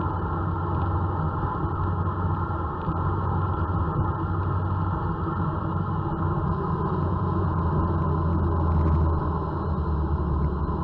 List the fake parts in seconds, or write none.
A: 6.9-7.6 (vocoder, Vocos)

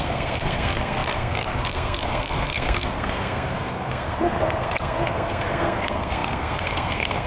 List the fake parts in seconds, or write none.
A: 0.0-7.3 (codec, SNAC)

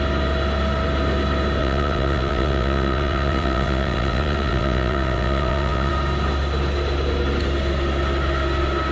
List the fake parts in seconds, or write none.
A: 1.6-5.9 (vocoder, WaveNeXt)